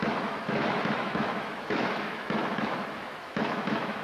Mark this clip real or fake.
fake